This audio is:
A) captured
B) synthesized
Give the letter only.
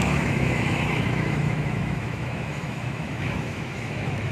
B